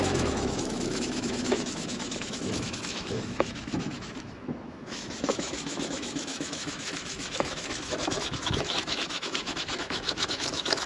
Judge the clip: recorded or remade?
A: remade